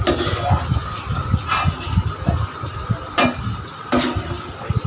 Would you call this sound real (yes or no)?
yes